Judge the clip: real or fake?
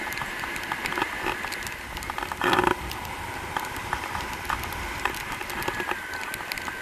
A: real